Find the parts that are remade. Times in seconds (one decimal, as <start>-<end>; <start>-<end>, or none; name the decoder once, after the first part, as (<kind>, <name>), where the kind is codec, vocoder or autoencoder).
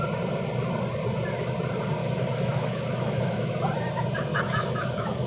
2.0-3.6 (autoencoder, DAC-VAE); 4.3-5.3